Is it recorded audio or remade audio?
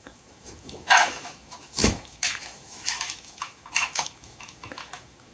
remade